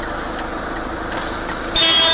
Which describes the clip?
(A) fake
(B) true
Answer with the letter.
B